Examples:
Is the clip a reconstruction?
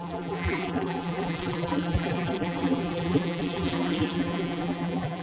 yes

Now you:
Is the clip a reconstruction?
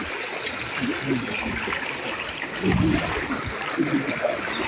no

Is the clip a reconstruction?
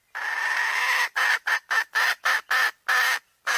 no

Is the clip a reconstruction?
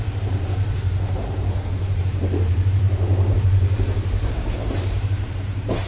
yes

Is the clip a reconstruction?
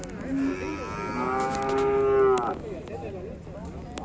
no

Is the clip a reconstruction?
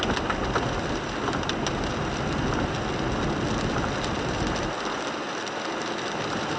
yes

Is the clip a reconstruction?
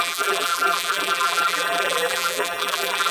yes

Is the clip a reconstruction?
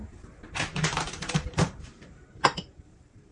yes